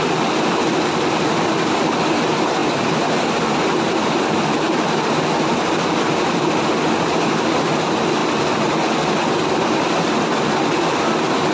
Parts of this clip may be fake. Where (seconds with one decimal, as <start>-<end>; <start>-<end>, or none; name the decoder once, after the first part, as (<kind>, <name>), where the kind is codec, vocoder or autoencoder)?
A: 2.6-4.9 (vocoder, BigVGAN v2)